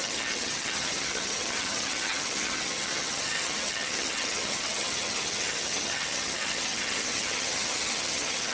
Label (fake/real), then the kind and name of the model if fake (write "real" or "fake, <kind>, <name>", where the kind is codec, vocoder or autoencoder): fake, vocoder, HiFi-GAN